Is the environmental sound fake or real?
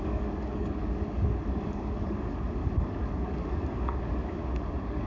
fake